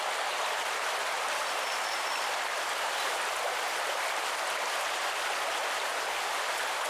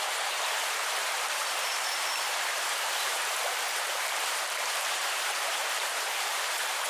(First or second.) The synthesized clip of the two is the second